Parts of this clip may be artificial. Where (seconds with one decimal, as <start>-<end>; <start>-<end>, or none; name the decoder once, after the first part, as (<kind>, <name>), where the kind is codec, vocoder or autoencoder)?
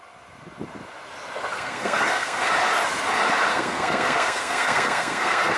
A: 1.5-2.5 (codec, SNAC); 3.5-5.6